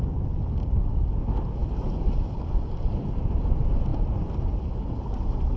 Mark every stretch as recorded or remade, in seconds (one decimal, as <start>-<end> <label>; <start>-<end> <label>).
0.0-5.6 recorded